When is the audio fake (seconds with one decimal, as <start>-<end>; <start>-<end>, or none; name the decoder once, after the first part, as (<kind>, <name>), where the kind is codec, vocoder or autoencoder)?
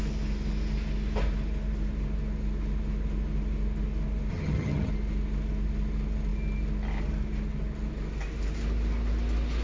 4.3-4.9 (vocoder, HiFi-GAN)